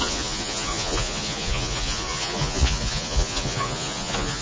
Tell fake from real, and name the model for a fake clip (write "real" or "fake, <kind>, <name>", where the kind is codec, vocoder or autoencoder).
fake, vocoder, Vocos